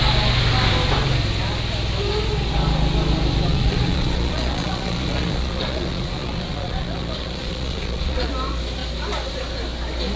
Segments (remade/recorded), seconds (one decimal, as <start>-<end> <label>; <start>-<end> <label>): 0.0-3.5 recorded; 3.5-8.3 remade; 8.3-10.2 recorded